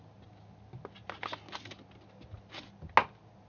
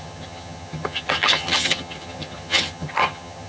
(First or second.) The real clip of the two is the first